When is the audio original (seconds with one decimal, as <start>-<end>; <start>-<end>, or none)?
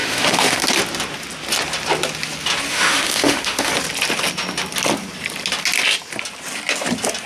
0.6-2.7; 3.7-7.3